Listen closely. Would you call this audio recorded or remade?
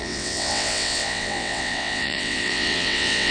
remade